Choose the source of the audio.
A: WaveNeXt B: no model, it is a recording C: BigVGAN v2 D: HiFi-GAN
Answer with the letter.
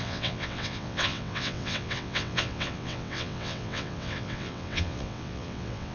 A